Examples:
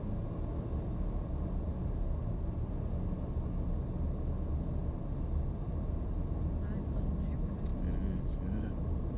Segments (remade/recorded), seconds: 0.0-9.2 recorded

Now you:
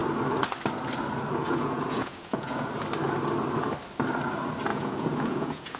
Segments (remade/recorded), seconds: 0.0-1.4 recorded; 1.4-2.7 remade; 2.7-4.7 recorded; 4.7-5.8 remade